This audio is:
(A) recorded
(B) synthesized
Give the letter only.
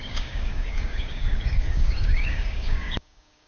B